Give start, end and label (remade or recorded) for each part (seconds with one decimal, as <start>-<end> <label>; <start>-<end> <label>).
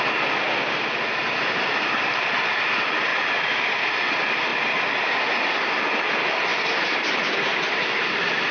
0.0-8.5 recorded